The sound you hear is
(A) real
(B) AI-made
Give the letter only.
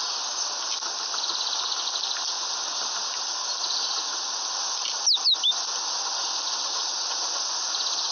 A